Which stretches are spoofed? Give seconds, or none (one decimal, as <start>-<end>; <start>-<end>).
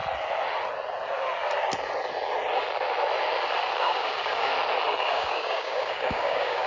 3.8-4.5; 5.0-6.7